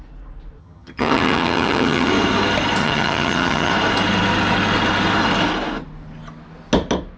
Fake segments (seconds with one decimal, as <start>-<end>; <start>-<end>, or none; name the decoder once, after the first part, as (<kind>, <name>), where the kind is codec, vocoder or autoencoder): 0.6-2.1 (vocoder, HiFi-GAN); 2.8-3.7